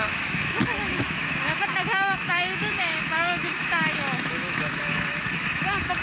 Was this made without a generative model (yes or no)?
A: no